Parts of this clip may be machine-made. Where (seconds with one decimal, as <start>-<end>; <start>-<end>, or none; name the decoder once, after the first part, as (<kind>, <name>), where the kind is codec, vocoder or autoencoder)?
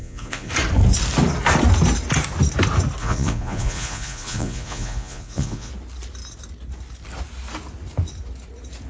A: 0.0-0.5 (vocoder, Vocos); 3.0-5.7